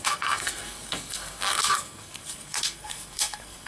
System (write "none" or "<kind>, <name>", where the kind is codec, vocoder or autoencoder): codec, SNAC